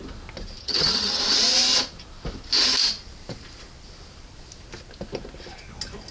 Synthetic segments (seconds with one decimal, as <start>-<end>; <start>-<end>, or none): 0.6-1.2